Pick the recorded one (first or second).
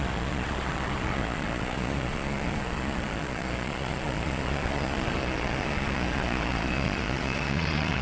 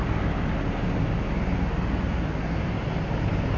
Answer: second